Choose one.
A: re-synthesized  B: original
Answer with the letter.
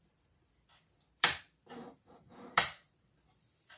A